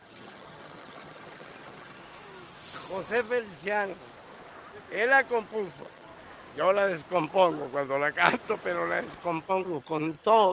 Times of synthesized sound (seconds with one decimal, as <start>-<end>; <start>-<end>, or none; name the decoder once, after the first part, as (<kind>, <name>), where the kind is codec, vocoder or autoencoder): 0.0-2.0 (vocoder, HiFi-GAN); 5.5-6.1; 9.5-10.5